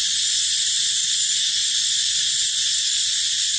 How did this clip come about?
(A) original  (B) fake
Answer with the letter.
A